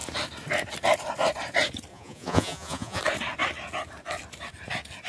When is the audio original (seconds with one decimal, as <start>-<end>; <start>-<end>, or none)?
0.0-1.9; 3.0-5.1